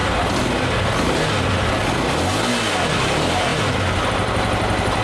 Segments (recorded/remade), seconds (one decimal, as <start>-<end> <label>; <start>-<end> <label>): 0.0-3.0 recorded; 3.0-3.5 remade; 3.5-4.0 recorded; 4.0-5.0 remade